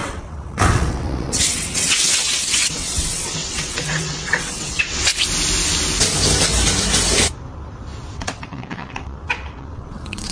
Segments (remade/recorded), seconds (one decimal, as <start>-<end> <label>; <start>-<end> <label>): 0.0-5.1 remade; 5.1-8.1 recorded; 8.1-10.3 remade

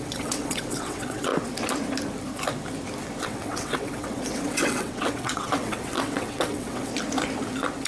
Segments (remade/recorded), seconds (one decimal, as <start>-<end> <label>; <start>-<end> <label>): 0.0-1.3 remade; 1.3-3.2 recorded; 3.2-6.9 remade; 6.9-7.9 recorded

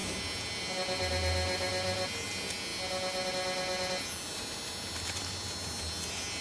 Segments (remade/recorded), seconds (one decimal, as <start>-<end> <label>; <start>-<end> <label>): 0.0-6.4 recorded